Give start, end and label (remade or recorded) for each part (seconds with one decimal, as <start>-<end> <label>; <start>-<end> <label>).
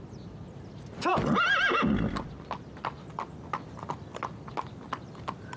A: 0.0-5.6 recorded